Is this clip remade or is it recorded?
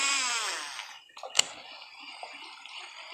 recorded